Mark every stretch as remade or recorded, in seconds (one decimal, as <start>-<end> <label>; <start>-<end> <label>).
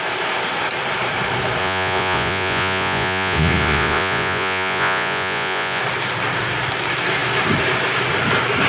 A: 0.0-1.6 recorded; 1.6-5.8 remade; 5.8-8.7 recorded